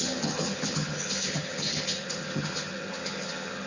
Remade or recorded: remade